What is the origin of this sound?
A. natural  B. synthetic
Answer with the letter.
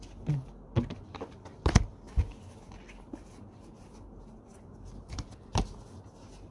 A